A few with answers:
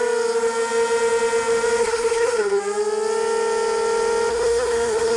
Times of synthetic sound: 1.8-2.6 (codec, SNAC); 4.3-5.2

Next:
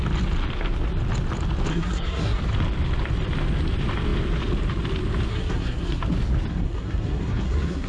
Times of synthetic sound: 1.7-2.4 (codec, SNAC); 5.3-6.0; 6.5-7.9

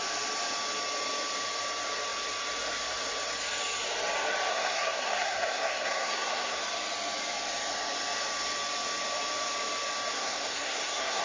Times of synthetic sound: 4.5-6.6 (codec, SNAC); 10.1-11.2